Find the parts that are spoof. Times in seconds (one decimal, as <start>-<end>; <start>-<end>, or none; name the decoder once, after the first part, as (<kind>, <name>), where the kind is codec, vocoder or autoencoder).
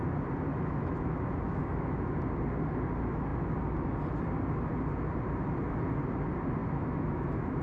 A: 0.5-2.2 (autoencoder, DAC-VAE); 6.6-7.6